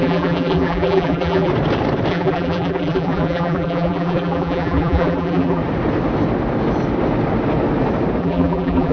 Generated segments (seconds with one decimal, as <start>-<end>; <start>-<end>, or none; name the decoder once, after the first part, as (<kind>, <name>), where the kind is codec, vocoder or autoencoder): 0.0-1.5 (vocoder, BigVGAN v2); 2.1-5.6; 8.2-8.9